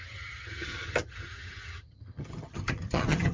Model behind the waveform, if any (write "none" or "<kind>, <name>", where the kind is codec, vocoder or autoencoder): vocoder, HiFi-GAN